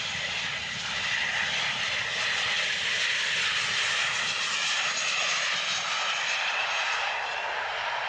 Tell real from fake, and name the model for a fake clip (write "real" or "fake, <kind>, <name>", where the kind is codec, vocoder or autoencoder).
real